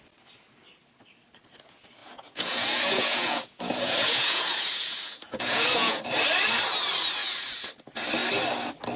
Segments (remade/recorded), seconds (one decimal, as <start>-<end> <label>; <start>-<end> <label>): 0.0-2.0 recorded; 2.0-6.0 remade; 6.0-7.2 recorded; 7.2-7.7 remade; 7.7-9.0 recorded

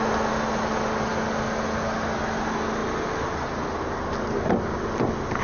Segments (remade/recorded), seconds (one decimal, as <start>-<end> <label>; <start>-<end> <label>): 0.0-5.4 recorded

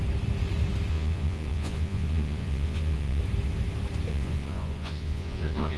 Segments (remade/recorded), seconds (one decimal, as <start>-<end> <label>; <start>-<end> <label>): 0.0-0.9 recorded; 0.9-3.2 remade; 3.2-4.1 recorded; 4.1-5.8 remade

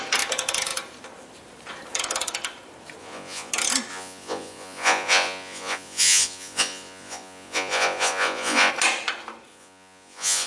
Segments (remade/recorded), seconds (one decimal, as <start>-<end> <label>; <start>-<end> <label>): 0.0-3.0 recorded; 3.0-3.5 remade; 3.5-3.9 recorded; 3.9-8.7 remade; 8.7-9.5 recorded; 9.5-10.5 remade

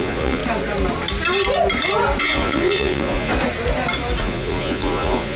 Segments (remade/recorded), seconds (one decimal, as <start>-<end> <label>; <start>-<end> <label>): 0.0-0.4 remade; 0.4-2.2 recorded; 2.2-3.3 remade; 3.3-4.2 recorded; 4.2-5.4 remade

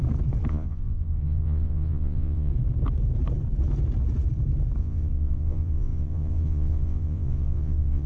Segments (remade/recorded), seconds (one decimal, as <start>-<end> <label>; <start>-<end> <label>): 0.0-0.5 recorded; 0.5-2.5 remade; 2.5-4.8 recorded; 4.8-8.1 remade

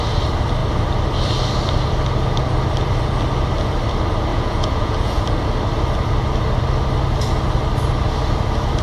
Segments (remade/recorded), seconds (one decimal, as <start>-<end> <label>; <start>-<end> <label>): 0.0-4.3 recorded; 4.3-5.2 remade; 5.2-8.8 recorded